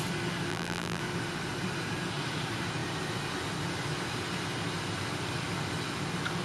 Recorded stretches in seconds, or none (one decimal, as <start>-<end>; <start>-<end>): 0.0-0.5; 1.0-6.4